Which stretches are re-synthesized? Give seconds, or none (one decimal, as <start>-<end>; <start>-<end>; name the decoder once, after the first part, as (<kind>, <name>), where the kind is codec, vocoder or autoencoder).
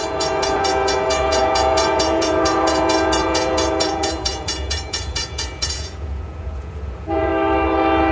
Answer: 0.0-7.3 (vocoder, Vocos)